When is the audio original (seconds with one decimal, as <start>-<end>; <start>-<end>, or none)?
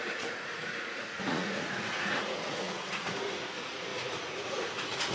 none